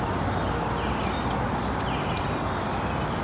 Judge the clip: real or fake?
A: real